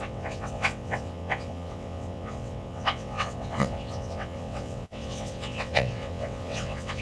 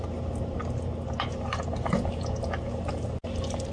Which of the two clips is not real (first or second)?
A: first